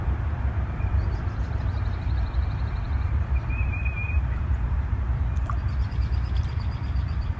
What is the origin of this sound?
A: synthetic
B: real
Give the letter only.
A